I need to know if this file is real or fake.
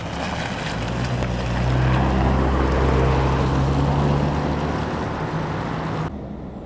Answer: real